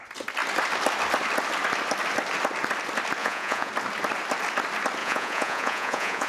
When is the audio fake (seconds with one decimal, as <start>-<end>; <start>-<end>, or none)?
3.2-3.7; 5.0-6.3